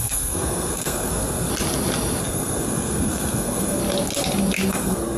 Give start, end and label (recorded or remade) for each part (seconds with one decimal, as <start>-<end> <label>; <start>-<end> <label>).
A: 0.0-1.5 remade; 1.5-2.2 recorded; 2.2-3.8 remade; 3.8-4.7 recorded; 4.7-5.2 remade

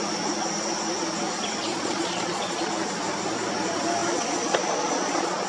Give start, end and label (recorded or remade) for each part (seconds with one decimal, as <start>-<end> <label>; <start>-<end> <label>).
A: 0.0-1.7 recorded; 1.7-2.7 remade; 2.7-4.0 recorded; 4.0-5.5 remade

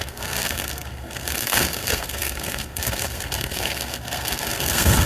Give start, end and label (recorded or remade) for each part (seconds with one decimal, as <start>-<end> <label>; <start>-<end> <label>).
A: 0.0-5.1 remade